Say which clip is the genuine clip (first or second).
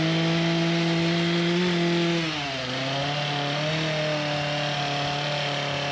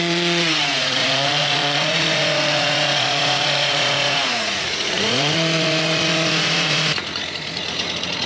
first